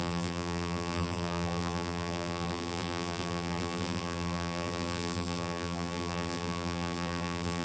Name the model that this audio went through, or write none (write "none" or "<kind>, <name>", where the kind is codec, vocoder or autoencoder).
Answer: vocoder, BigVGAN v2